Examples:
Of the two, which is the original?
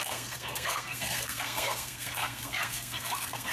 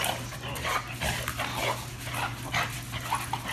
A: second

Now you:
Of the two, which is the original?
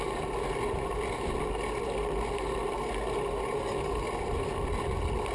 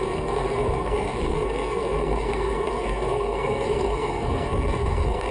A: first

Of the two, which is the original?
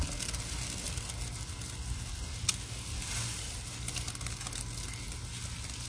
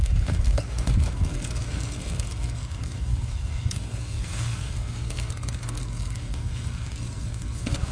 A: first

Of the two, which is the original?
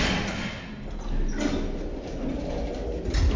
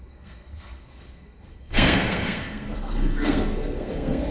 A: first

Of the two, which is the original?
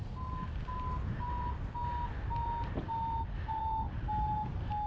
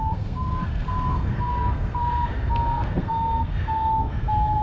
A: first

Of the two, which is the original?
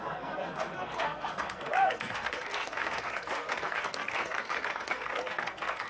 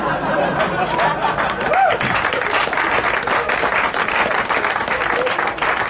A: second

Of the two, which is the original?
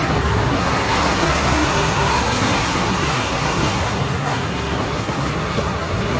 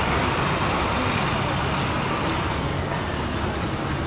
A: second